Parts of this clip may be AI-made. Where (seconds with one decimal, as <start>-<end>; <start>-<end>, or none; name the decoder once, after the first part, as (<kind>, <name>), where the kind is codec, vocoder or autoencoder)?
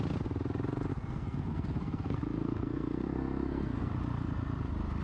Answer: 0.9-3.9 (codec, SNAC)